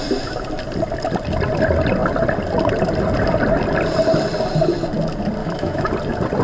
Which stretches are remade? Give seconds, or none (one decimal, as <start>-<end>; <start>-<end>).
5.4-5.9